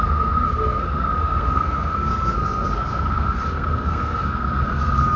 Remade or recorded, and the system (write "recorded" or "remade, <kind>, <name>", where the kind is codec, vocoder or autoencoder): remade, codec, SNAC